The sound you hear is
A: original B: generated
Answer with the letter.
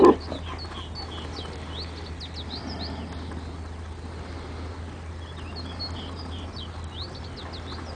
A